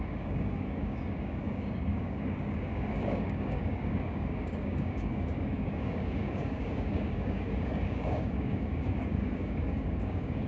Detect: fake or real fake